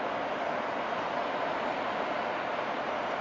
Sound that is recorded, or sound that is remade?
recorded